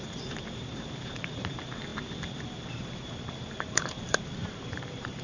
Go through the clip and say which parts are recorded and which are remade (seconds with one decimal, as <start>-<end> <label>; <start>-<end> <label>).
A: 0.0-5.2 remade